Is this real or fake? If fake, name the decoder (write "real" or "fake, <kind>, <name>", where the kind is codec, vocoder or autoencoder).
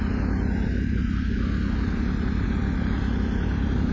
real